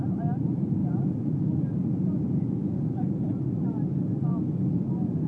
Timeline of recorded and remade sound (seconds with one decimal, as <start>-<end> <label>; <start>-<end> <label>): 0.0-0.8 recorded; 0.8-1.4 remade; 1.4-1.8 recorded; 1.8-3.4 remade; 3.4-5.3 recorded